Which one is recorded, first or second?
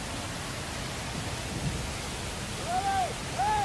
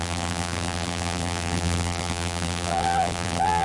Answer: first